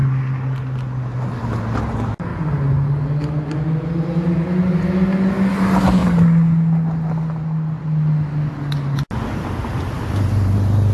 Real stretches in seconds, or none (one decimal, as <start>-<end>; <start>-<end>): 0.0-10.9